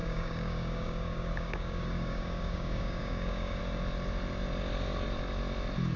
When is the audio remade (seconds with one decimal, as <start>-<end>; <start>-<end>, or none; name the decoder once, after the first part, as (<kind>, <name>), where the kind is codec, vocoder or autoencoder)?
0.0-3.6 (codec, DAC)